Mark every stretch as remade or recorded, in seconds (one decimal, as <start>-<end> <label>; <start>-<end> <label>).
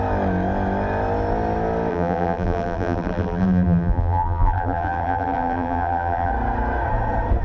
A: 0.0-1.9 recorded; 1.9-6.3 remade; 6.3-7.4 recorded